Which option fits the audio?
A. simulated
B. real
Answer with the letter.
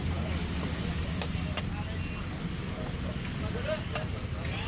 B